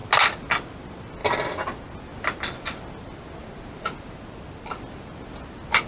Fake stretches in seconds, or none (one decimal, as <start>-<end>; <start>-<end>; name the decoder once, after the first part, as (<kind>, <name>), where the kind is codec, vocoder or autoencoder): none